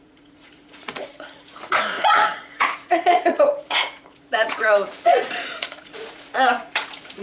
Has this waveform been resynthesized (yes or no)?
yes